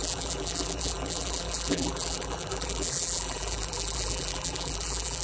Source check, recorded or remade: remade